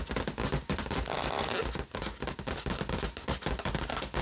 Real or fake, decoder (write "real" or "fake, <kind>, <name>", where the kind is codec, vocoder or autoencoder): real